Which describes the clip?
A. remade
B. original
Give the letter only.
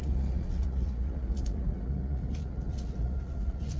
A